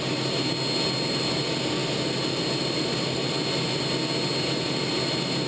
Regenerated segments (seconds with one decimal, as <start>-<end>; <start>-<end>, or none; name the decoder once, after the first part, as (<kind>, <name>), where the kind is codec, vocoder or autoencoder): none